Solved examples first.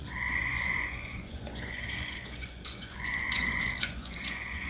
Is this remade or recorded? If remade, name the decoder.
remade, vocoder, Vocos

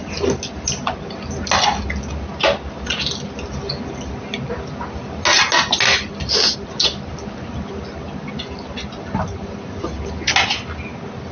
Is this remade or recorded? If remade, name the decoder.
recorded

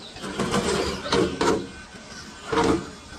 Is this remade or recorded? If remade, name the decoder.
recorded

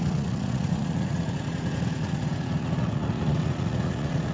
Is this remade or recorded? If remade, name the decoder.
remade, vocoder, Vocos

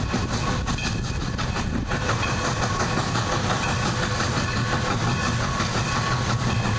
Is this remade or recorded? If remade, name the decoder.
recorded